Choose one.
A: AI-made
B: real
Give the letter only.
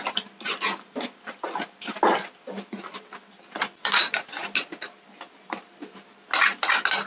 B